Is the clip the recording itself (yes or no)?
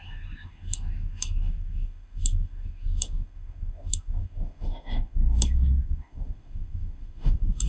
no